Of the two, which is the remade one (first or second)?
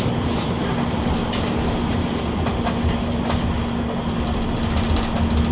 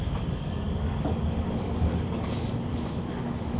second